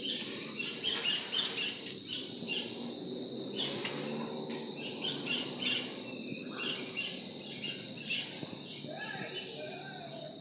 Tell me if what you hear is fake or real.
real